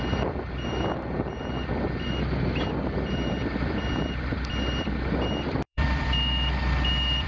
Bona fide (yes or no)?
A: no